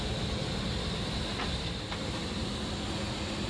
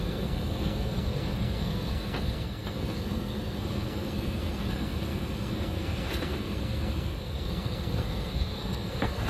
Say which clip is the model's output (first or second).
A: second